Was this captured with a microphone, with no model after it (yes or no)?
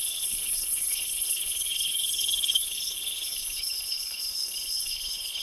no